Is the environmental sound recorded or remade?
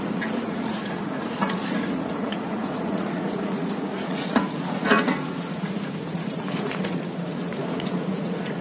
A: remade